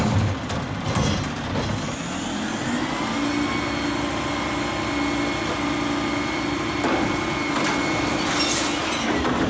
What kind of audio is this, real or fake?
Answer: real